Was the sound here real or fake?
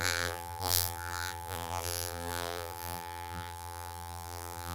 fake